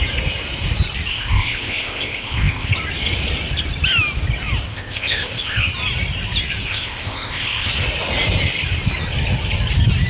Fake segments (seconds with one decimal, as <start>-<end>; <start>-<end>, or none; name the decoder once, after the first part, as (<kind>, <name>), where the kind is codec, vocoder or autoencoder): 1.1-2.7 (codec, ZipCodec); 4.7-5.7; 6.7-7.7